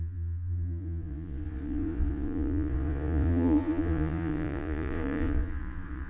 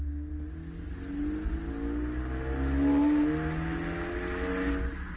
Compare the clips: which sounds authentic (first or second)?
second